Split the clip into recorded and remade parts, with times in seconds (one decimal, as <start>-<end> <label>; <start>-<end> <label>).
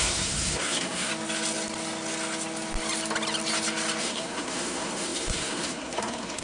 0.0-1.1 remade; 1.1-4.0 recorded; 4.0-6.4 remade